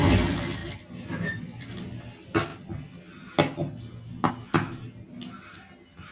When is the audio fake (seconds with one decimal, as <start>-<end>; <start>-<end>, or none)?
0.6-2.0